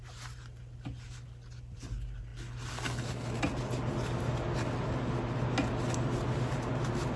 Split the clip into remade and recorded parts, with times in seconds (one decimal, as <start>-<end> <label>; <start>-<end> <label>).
0.0-7.2 recorded